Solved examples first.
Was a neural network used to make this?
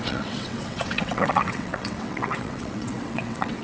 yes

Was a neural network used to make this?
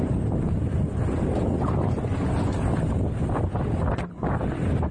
no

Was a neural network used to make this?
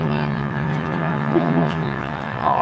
yes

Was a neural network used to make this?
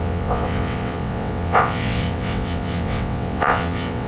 yes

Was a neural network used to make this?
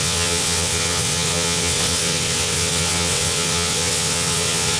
yes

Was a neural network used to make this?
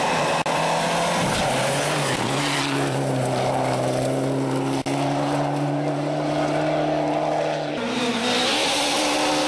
no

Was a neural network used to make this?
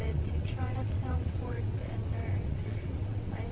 yes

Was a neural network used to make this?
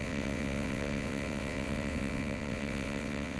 yes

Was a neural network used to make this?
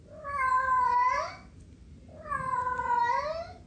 no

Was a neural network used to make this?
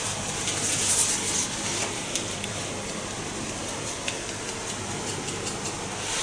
no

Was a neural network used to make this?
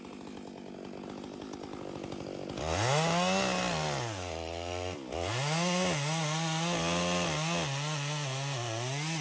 no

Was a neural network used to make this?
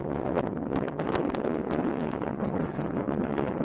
yes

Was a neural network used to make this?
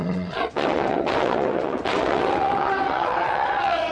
yes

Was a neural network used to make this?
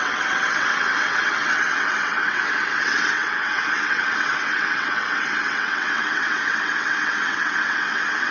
yes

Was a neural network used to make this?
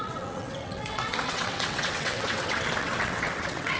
yes